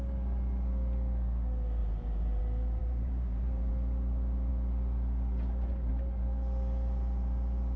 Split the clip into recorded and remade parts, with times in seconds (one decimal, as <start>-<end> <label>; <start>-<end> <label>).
0.0-1.8 recorded; 1.8-2.4 remade; 2.4-2.8 recorded; 2.8-3.7 remade; 3.7-7.8 recorded